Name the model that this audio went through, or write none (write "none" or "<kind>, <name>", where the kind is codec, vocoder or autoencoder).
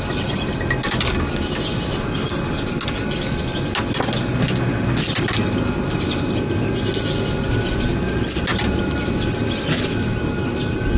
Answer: none